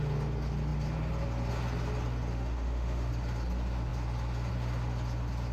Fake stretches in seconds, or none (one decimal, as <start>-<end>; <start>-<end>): 2.3-3.1